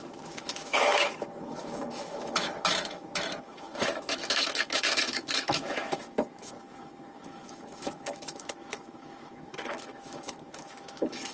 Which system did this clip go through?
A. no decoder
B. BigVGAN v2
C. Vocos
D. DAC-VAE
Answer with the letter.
D